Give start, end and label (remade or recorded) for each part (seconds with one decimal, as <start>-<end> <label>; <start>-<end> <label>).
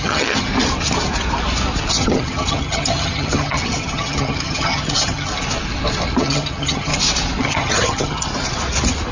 0.0-0.5 remade; 0.5-1.9 recorded; 1.9-5.3 remade; 5.3-6.2 recorded; 6.2-6.9 remade; 6.9-7.4 recorded; 7.4-8.3 remade; 8.3-9.1 recorded